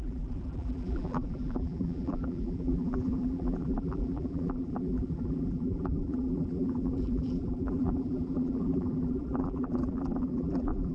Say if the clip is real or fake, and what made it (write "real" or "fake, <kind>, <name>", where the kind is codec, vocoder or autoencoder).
fake, vocoder, BigVGAN v2